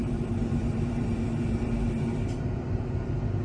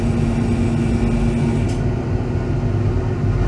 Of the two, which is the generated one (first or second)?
first